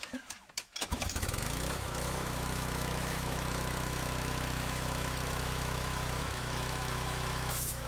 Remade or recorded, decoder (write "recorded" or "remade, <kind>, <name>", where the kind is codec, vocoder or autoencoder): remade, autoencoder, DAC-VAE